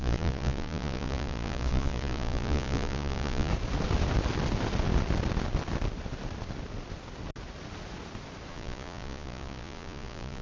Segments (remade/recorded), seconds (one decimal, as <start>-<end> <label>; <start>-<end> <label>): 0.0-3.5 remade; 3.5-8.5 recorded; 8.5-10.4 remade